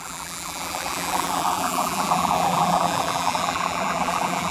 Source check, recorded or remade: remade